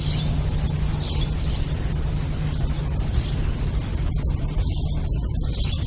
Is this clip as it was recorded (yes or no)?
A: yes